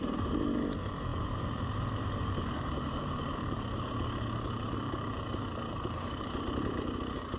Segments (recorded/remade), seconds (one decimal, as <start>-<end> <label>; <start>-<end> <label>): 0.0-7.4 remade